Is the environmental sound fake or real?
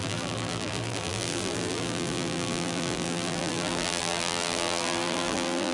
fake